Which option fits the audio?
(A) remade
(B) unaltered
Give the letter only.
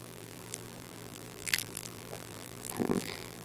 A